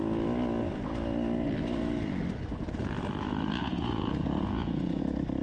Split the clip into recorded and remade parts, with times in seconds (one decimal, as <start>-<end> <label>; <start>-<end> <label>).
0.0-3.6 recorded; 3.6-5.0 remade; 5.0-5.4 recorded